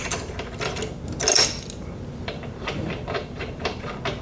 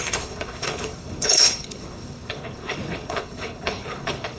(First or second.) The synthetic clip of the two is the second